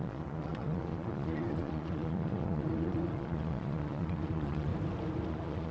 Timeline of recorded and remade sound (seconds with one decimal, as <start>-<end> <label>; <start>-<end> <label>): 0.0-4.7 remade; 4.7-5.3 recorded; 5.3-5.7 remade